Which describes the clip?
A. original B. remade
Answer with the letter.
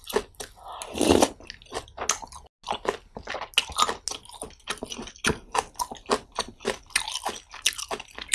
A